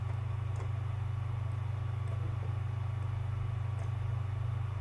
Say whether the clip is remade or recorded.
recorded